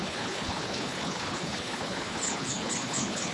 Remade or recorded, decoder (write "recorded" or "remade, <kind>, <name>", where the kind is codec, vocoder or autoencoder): remade, codec, HILCodec